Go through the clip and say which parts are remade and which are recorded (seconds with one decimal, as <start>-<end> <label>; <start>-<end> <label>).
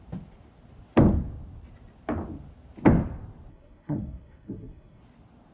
0.0-3.5 recorded; 3.5-5.0 remade; 5.0-5.5 recorded